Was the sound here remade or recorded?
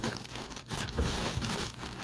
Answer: remade